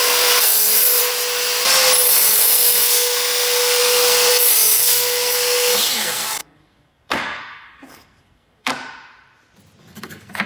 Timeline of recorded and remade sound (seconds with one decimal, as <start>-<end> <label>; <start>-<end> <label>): 0.0-1.0 remade; 1.0-2.1 recorded; 2.1-8.7 remade; 8.7-9.8 recorded; 9.8-10.5 remade